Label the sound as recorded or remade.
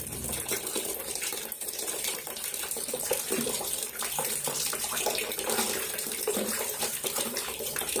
remade